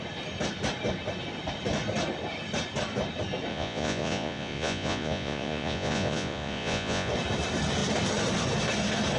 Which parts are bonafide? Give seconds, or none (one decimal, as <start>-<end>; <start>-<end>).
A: 0.0-3.5; 7.1-9.2